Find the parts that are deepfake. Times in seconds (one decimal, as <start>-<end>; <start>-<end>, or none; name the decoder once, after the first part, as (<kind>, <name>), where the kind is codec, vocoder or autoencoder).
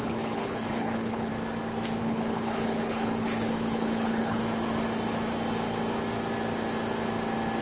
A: 0.0-1.3 (codec, HILCodec); 2.0-4.4